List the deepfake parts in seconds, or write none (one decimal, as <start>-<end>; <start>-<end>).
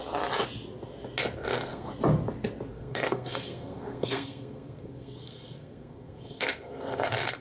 1.4-1.9; 2.7-7.4